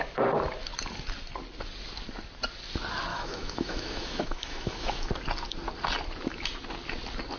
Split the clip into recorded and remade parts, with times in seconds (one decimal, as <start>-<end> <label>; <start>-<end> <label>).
0.0-3.1 recorded; 3.1-5.1 remade; 5.1-7.4 recorded